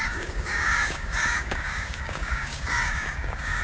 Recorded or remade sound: remade